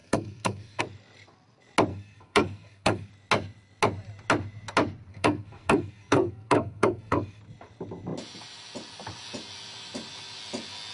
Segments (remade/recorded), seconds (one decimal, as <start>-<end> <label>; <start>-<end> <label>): 0.0-0.8 remade; 0.8-1.9 recorded; 1.9-3.1 remade; 3.1-5.1 recorded; 5.1-7.4 remade; 7.4-10.9 recorded